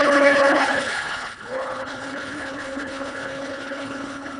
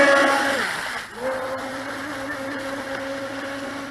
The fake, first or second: first